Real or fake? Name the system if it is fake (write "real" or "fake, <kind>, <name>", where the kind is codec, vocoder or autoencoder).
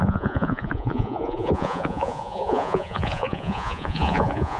fake, vocoder, Vocos